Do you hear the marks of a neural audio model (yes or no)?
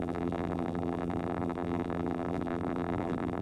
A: yes